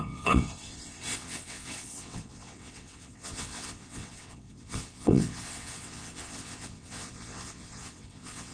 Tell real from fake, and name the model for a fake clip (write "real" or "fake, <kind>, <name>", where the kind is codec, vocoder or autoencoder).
fake, vocoder, WaveNeXt